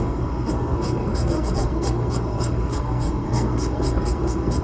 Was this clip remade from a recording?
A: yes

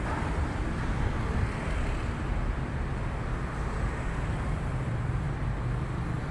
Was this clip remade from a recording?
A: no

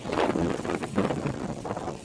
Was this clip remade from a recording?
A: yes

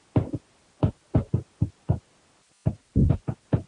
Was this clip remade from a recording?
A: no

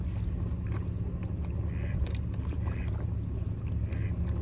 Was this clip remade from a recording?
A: no